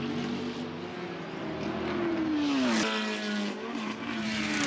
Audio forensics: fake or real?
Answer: real